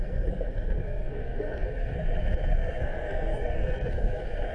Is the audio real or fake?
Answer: fake